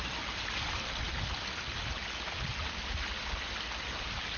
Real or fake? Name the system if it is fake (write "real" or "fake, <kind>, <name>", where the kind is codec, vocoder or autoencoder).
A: real